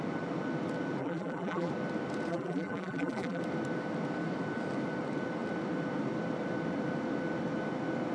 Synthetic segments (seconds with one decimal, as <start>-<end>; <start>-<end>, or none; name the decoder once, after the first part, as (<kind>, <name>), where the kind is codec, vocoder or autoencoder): 1.0-1.7 (vocoder, BigVGAN v2); 2.3-3.4